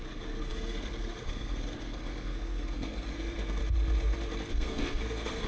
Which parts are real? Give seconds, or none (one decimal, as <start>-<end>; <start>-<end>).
3.6-4.5